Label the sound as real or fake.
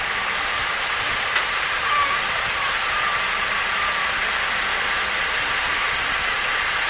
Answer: real